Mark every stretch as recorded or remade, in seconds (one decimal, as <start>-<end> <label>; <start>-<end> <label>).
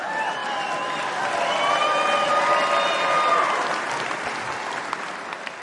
0.0-5.6 recorded